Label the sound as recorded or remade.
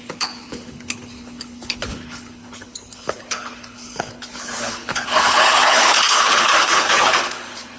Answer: remade